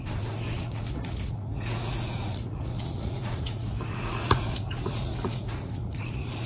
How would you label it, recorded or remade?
remade